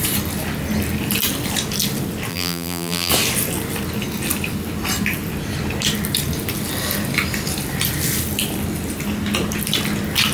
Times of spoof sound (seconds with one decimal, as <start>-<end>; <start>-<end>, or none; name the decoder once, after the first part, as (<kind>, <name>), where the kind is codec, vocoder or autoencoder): 2.3-3.1 (vocoder, BigVGAN v2)